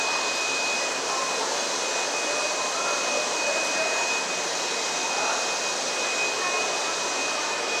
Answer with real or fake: real